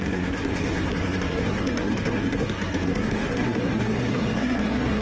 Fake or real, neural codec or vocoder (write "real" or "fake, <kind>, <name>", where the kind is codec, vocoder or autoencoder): fake, codec, SNAC